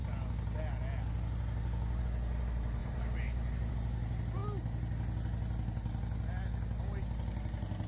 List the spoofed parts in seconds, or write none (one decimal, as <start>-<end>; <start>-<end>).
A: 2.8-3.7